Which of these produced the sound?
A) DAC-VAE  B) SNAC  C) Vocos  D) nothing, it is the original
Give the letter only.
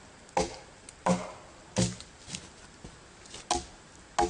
D